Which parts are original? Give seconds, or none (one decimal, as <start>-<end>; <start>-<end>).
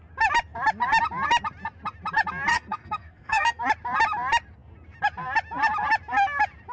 0.0-2.5; 3.6-6.7